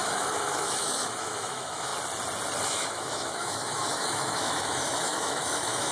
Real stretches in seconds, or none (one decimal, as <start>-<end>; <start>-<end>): 1.9-2.6